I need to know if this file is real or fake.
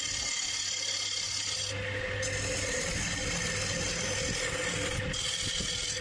real